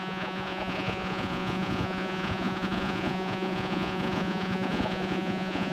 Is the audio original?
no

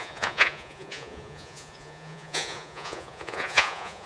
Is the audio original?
no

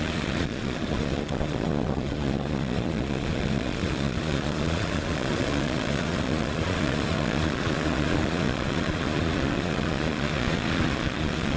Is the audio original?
no